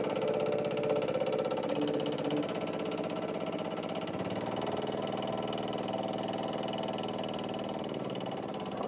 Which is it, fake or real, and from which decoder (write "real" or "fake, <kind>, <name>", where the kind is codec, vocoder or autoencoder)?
real